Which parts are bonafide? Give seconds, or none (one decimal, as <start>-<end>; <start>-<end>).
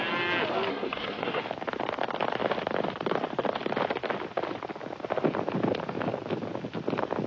0.0-0.7; 1.4-7.3